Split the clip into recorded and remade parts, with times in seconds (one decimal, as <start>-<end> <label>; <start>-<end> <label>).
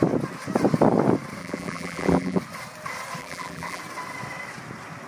0.0-1.4 recorded; 1.4-2.4 remade; 2.4-3.2 recorded; 3.2-3.8 remade; 3.8-5.1 recorded